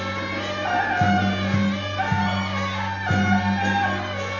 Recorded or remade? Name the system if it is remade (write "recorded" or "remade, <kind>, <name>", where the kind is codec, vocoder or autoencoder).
recorded